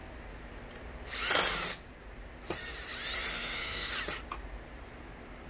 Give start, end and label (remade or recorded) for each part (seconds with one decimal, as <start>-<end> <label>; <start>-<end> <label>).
0.0-3.3 recorded; 3.3-3.9 remade; 3.9-5.5 recorded